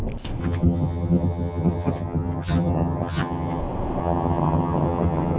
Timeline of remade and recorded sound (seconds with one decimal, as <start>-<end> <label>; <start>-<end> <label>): 0.0-0.4 recorded; 0.4-3.6 remade; 3.6-4.0 recorded; 4.0-5.4 remade